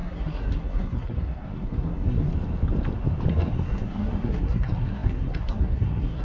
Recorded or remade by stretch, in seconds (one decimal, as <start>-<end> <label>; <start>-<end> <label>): 0.0-2.3 remade; 2.3-3.3 recorded; 3.3-6.2 remade